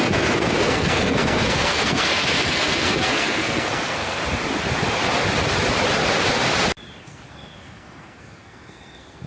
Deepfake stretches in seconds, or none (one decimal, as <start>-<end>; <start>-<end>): 0.0-4.2; 7.0-9.3